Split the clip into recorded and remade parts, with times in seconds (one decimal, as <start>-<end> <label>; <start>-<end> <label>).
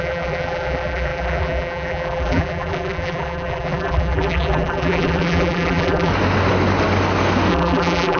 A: 0.0-6.1 remade; 6.1-7.5 recorded; 7.5-8.2 remade